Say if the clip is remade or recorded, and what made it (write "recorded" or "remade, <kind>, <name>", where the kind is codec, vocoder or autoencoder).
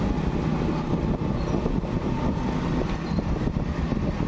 recorded